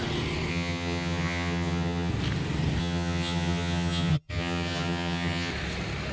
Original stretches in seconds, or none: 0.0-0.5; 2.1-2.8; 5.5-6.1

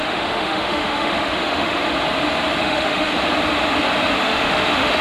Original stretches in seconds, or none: 1.8-2.6; 3.1-4.2

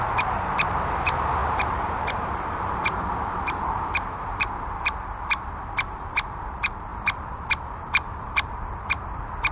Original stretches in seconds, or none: none

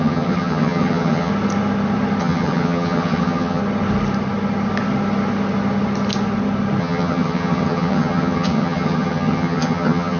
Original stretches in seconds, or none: 1.3-2.2; 3.6-6.8

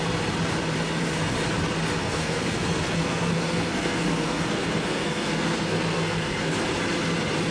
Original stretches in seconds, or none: 0.0-2.0; 6.5-7.5